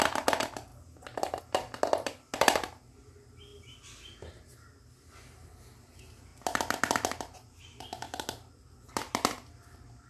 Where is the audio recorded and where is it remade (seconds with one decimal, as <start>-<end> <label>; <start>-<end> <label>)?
0.0-10.1 recorded